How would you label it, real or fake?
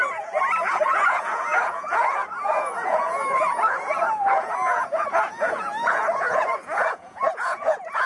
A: fake